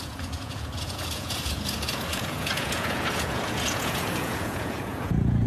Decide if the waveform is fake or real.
fake